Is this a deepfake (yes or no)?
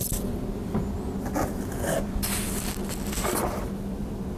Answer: no